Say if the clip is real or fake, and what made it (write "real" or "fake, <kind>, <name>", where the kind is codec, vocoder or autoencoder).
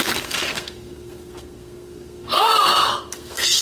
fake, codec, SNAC